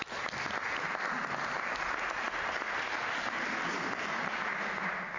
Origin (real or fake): real